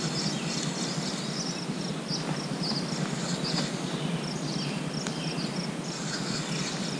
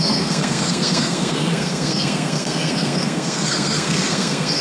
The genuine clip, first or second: first